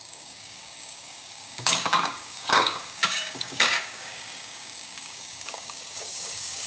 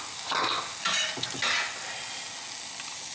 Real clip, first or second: second